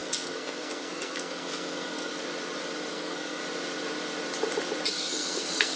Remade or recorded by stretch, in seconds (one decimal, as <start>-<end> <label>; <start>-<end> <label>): 0.0-2.1 remade; 2.1-2.9 recorded; 2.9-3.4 remade; 3.4-4.9 recorded; 4.9-5.8 remade